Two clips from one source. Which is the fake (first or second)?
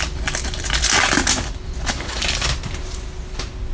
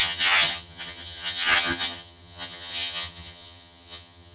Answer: second